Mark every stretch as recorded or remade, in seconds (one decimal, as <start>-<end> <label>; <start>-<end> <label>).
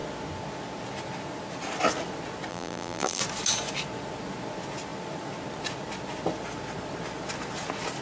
0.0-2.5 recorded; 2.5-3.2 remade; 3.2-8.0 recorded